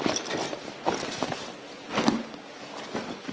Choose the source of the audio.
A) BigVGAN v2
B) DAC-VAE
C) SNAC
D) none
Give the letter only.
D